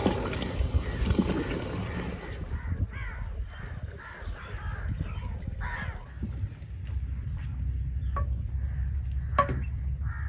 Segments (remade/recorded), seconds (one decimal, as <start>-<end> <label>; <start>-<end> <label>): 0.0-10.3 recorded